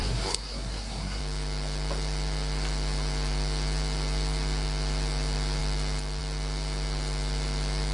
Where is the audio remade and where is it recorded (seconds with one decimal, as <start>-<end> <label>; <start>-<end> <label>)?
0.0-1.2 remade; 1.2-7.9 recorded